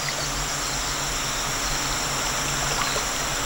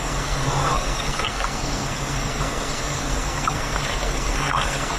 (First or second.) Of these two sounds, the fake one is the second